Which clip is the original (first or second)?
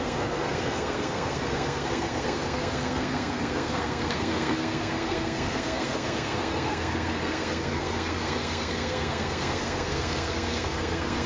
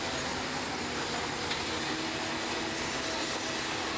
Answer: second